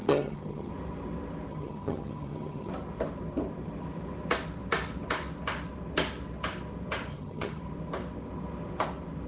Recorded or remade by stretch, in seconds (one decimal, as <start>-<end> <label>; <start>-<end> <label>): 0.0-0.7 remade; 0.7-1.5 recorded; 1.5-2.7 remade; 2.7-7.1 recorded; 7.1-7.6 remade; 7.6-9.3 recorded